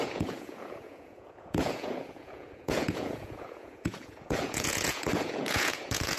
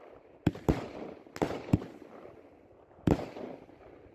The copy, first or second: first